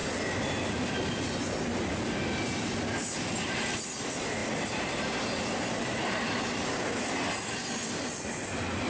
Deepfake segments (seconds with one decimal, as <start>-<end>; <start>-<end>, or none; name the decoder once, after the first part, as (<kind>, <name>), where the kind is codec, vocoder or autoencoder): 4.4-6.4 (vocoder, BigVGAN v2); 7.8-8.3